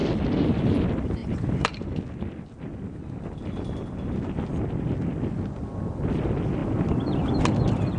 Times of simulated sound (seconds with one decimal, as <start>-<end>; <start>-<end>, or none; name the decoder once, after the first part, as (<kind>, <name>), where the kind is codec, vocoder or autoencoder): 0.0-0.7 (vocoder, BigVGAN v2); 1.2-2.0